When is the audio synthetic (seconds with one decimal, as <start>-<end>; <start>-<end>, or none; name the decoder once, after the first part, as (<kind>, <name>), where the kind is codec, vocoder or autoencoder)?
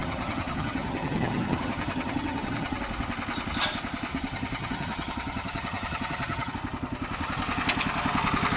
0.0-2.8 (vocoder, HiFi-GAN); 4.1-6.5